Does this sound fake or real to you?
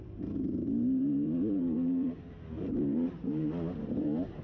fake